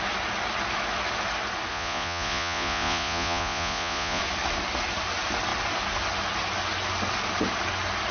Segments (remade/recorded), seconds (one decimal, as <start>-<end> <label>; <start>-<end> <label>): 0.0-1.7 recorded; 1.7-4.2 remade; 4.2-8.1 recorded